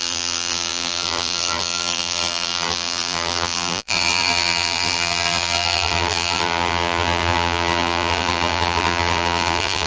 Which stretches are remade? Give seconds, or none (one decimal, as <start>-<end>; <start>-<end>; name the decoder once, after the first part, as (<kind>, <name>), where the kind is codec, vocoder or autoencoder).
0.0-9.9 (vocoder, BigVGAN v2)